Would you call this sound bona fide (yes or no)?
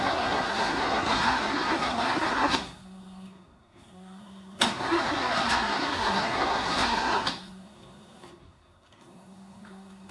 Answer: no